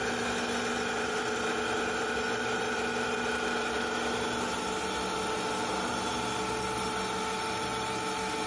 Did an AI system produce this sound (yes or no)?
no